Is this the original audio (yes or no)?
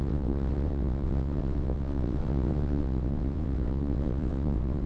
no